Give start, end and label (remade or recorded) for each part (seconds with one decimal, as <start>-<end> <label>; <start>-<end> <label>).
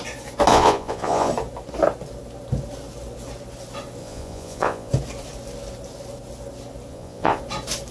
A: 0.0-0.5 recorded; 0.5-1.3 remade; 1.3-4.0 recorded; 4.0-4.9 remade; 4.9-6.9 recorded; 6.9-7.4 remade; 7.4-7.9 recorded